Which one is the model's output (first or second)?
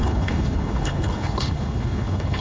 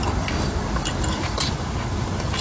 first